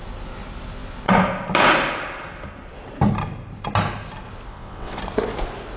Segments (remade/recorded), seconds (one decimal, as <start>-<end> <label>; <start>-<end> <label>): 0.0-4.5 recorded; 4.5-5.0 remade; 5.0-5.8 recorded

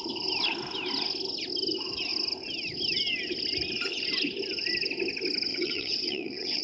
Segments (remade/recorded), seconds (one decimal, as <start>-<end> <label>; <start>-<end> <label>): 0.0-5.5 recorded; 5.5-6.6 remade